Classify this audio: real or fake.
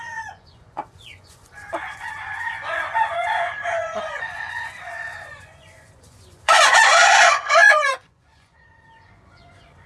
fake